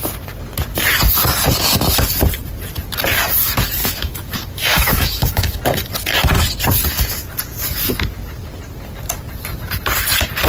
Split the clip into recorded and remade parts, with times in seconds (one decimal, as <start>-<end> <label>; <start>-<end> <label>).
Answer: 0.0-3.8 recorded; 3.8-5.6 remade; 5.6-10.5 recorded